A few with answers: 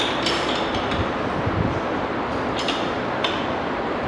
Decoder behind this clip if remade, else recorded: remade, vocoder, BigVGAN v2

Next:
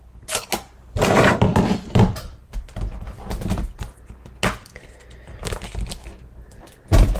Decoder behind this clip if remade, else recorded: recorded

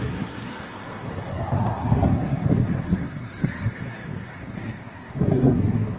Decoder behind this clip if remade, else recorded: remade, codec, SNAC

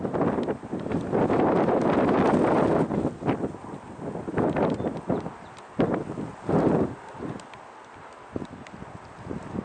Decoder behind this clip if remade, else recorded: recorded